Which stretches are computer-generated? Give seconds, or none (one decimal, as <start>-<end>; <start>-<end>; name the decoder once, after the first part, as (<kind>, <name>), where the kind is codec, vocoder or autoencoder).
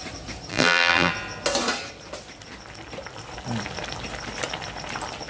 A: 0.5-1.1 (vocoder, BigVGAN v2)